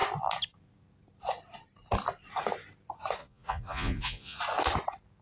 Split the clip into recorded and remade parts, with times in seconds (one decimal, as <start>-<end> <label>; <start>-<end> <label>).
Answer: 0.0-3.2 recorded; 3.2-4.4 remade; 4.4-5.2 recorded

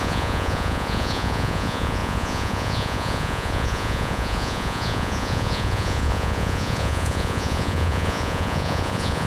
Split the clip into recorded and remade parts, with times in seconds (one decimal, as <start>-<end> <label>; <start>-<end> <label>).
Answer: 0.0-9.3 remade

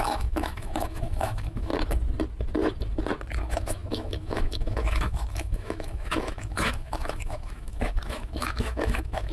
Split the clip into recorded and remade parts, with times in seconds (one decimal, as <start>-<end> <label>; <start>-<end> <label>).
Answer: 0.0-1.7 remade; 1.7-3.4 recorded; 3.4-9.3 remade

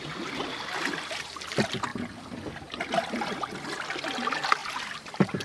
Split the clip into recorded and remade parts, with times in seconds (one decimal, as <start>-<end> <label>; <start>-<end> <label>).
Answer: 0.0-1.9 recorded; 1.9-3.2 remade; 3.2-4.6 recorded; 4.6-5.4 remade

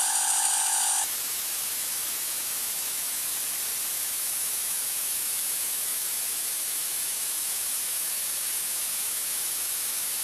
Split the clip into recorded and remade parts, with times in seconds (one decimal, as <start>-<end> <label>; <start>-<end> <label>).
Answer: 0.0-3.3 remade; 3.3-3.9 recorded; 3.9-10.2 remade

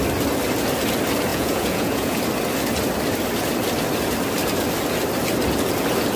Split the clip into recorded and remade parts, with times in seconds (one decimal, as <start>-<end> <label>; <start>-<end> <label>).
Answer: 0.0-1.3 recorded; 1.3-2.2 remade; 2.2-6.2 recorded

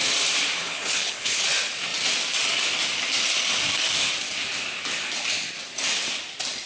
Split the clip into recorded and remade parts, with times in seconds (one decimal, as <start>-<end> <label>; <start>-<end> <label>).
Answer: 0.0-0.6 recorded; 0.6-1.4 remade; 1.4-6.7 recorded

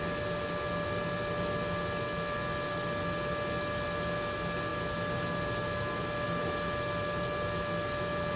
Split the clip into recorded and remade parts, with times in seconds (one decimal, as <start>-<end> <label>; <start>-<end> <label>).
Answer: 0.0-8.4 recorded